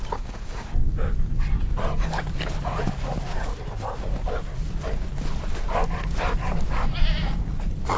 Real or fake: real